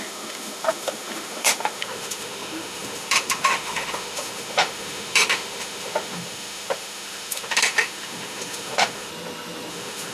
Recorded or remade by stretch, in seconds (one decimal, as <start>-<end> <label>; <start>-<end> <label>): 0.0-9.1 remade; 9.1-9.7 recorded; 9.7-10.1 remade